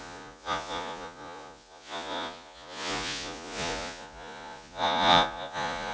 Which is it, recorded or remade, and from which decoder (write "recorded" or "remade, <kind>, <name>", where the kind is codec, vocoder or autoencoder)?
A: remade, vocoder, Vocos